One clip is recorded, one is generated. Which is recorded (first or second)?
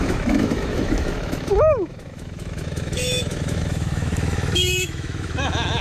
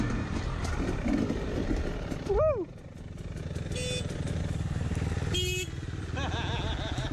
second